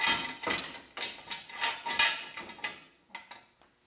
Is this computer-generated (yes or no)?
no